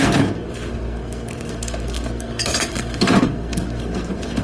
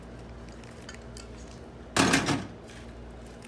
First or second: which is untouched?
second